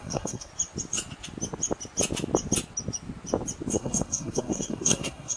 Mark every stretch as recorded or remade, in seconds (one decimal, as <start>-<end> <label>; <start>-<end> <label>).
0.0-0.5 remade; 0.5-3.7 recorded; 3.7-5.4 remade

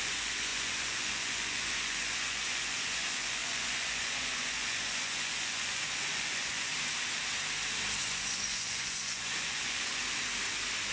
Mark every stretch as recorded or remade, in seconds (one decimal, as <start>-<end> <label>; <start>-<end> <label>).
0.0-6.7 remade; 6.7-8.0 recorded; 8.0-10.0 remade; 10.0-10.9 recorded